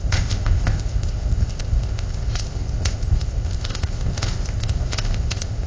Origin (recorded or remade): remade